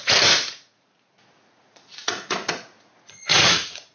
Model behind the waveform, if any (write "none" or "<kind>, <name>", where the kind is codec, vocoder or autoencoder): vocoder, Vocos